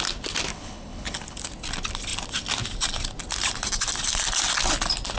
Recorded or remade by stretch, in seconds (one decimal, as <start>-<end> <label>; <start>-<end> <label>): 0.0-0.5 recorded; 0.5-1.4 remade; 1.4-5.2 recorded